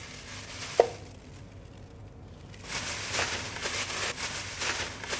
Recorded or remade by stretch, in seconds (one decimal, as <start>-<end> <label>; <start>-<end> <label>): 0.0-5.2 recorded